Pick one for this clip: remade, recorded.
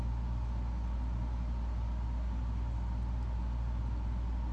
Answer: recorded